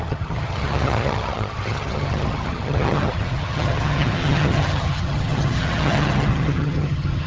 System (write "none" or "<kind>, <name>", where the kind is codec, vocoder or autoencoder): vocoder, HiFi-GAN